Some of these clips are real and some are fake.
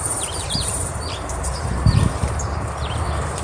fake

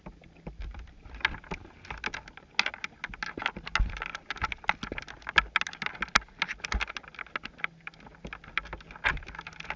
real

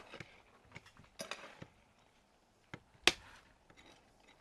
real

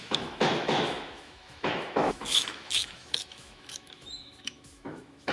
fake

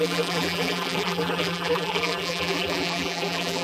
fake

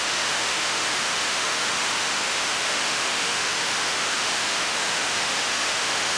fake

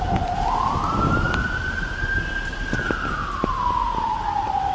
real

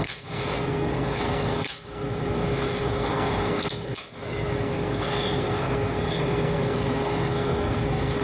fake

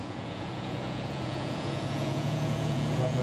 fake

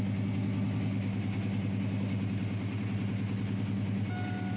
real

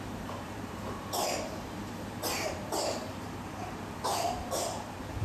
fake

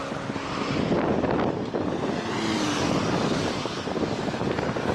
real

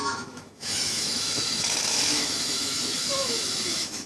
fake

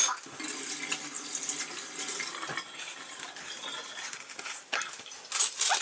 real